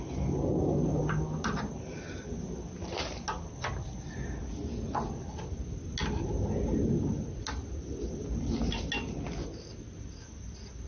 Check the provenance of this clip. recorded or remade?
recorded